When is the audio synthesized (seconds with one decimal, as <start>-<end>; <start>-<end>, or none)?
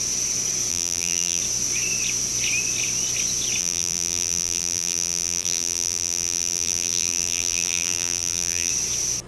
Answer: 0.7-1.4; 3.6-8.7